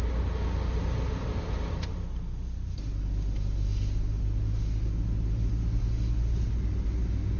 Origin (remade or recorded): recorded